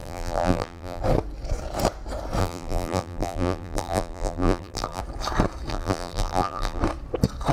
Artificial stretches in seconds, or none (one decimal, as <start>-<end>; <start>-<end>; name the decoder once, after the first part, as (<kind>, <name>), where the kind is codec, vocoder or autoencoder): 0.0-1.0 (vocoder, BigVGAN v2); 2.4-5.0; 5.7-6.8